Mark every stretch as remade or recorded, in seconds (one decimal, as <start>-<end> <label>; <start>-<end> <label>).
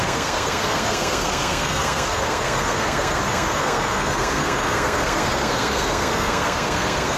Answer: 0.0-7.2 remade